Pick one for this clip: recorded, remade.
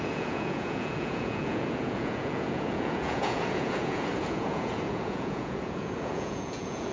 remade